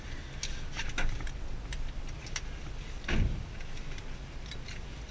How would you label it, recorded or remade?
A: recorded